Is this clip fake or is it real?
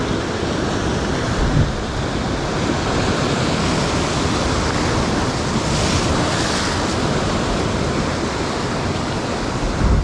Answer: real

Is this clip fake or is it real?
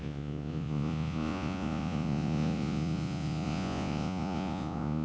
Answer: fake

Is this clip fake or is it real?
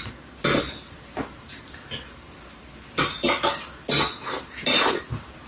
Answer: real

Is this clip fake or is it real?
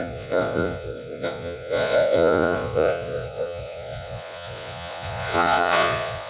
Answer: fake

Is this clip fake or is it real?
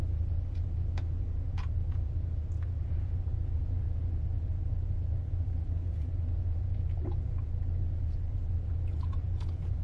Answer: fake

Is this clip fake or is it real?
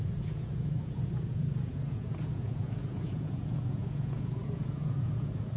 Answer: fake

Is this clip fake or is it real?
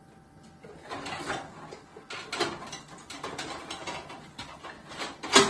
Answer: real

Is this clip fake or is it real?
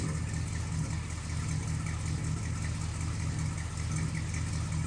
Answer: real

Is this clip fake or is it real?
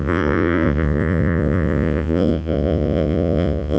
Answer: fake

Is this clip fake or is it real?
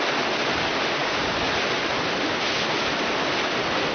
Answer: real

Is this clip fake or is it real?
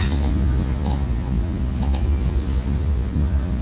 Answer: fake